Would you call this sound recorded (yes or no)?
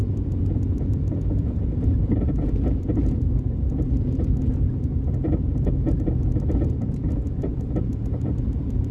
no